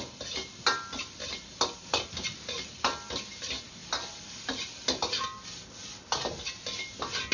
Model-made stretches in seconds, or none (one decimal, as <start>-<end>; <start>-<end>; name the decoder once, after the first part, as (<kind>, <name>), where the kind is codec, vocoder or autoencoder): none